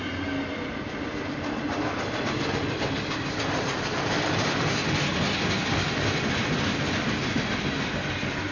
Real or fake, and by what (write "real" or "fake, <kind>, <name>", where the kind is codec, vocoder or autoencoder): real